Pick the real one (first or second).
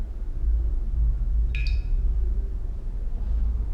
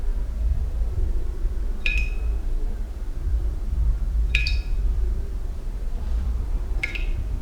first